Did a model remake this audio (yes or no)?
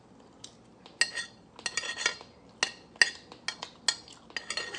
no